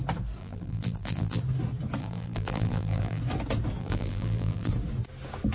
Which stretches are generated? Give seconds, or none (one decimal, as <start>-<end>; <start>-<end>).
0.4-1.4; 2.0-3.2; 3.8-4.7